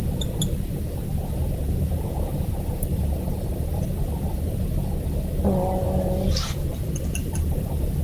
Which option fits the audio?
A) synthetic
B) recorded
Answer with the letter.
B